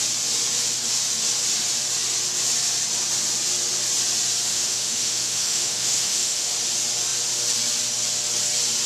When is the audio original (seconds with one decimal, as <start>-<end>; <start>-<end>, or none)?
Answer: 0.0-4.5; 6.5-8.9